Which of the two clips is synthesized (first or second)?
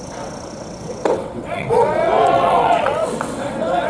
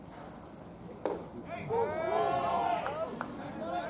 first